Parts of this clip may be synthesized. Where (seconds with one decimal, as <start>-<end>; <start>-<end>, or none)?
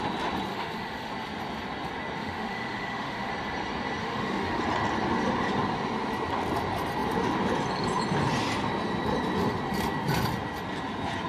0.5-1.1; 2.2-3.3; 4.0-4.6